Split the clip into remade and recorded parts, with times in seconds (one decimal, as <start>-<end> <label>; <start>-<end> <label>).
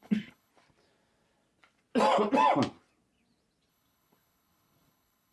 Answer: 0.0-0.5 remade; 0.5-3.7 recorded; 3.7-5.3 remade